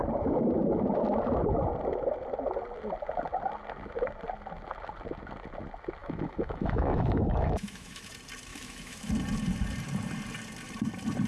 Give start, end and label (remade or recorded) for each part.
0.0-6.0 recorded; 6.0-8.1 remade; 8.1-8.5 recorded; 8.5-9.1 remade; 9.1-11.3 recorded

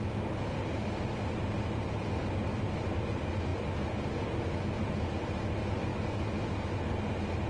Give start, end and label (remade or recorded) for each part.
0.0-7.5 recorded

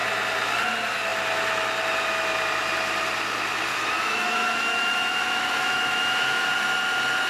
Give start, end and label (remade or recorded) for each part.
0.0-3.7 recorded; 3.7-6.5 remade; 6.5-7.3 recorded

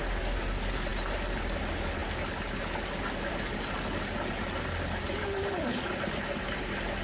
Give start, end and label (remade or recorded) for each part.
0.0-7.0 recorded

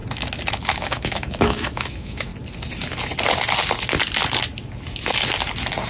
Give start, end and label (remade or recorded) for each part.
0.0-0.5 recorded; 0.5-2.3 remade; 2.3-5.9 recorded